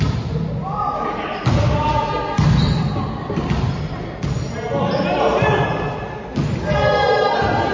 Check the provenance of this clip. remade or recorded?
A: recorded